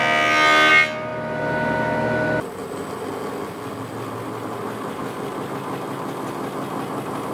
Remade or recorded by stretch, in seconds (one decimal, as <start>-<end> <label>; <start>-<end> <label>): 0.0-7.3 recorded